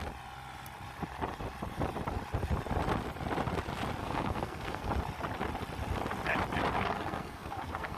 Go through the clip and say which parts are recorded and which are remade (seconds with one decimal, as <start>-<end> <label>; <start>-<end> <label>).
0.0-4.0 recorded; 4.0-4.9 remade; 4.9-6.8 recorded; 6.8-8.0 remade